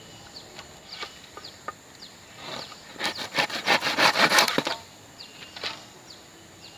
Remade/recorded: remade